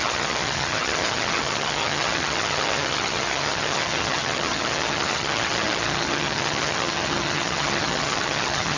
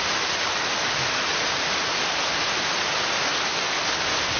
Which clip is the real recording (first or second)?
second